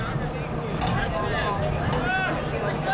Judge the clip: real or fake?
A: real